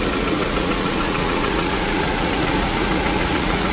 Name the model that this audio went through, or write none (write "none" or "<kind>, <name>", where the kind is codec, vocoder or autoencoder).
vocoder, Vocos